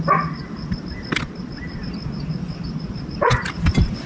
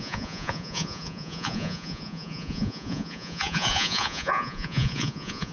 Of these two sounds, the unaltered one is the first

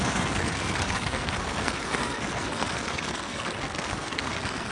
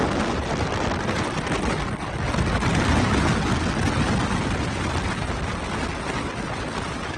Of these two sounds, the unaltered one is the second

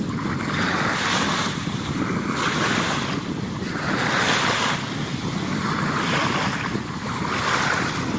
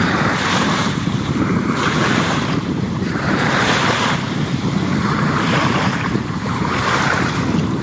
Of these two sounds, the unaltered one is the first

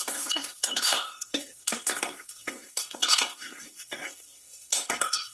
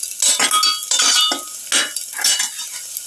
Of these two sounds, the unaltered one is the second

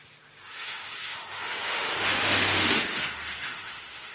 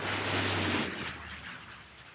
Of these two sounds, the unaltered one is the second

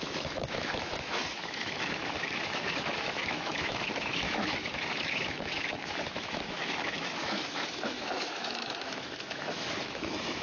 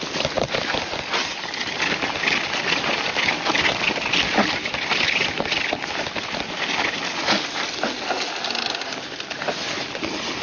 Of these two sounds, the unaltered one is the second